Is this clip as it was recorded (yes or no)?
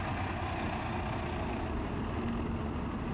yes